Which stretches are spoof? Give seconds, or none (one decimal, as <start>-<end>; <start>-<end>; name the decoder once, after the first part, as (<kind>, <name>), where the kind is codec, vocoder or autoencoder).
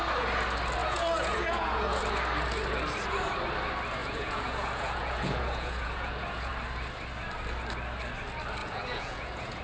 0.8-2.0 (vocoder, Vocos); 4.0-6.5; 8.6-9.6